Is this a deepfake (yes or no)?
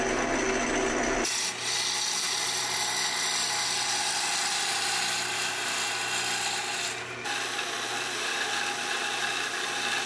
no